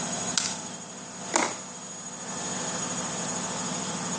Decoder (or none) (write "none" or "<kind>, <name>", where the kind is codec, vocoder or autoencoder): none